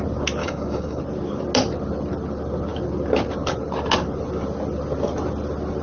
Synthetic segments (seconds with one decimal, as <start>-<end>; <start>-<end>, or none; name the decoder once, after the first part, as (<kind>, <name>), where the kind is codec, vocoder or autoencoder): 0.4-1.0 (codec, DAC)